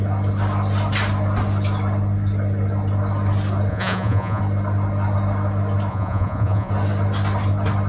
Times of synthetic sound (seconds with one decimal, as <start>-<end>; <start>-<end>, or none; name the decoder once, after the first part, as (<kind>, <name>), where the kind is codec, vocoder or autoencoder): 3.7-4.4 (vocoder, Vocos); 5.9-6.7